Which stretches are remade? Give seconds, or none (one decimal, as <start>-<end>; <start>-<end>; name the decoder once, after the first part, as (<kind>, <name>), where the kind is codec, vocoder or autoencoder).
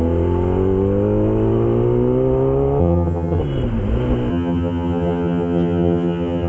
2.8-3.4 (vocoder, HiFi-GAN); 4.3-6.5